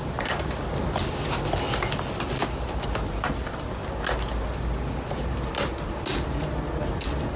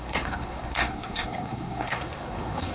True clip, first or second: first